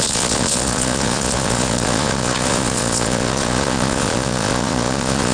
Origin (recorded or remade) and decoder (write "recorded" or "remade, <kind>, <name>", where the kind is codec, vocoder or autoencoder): remade, vocoder, Vocos